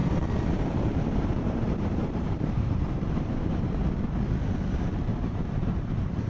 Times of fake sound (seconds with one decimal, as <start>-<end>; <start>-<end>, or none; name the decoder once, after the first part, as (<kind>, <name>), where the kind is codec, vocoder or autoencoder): 0.0-3.8 (vocoder, BigVGAN v2); 5.1-6.3